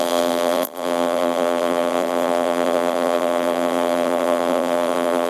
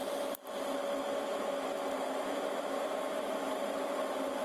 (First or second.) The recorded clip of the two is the second